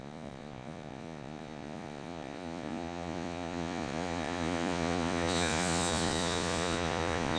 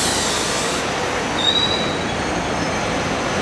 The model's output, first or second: first